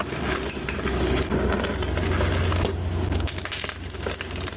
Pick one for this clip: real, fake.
real